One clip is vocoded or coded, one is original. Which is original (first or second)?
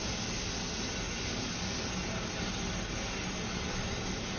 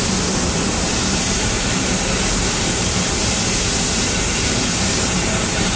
first